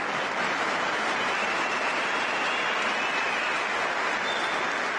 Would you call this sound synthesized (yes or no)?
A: no